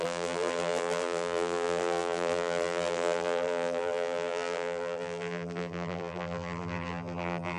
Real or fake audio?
fake